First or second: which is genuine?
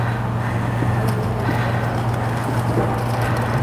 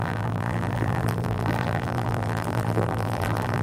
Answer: first